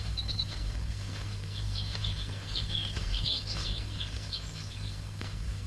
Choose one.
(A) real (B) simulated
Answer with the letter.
B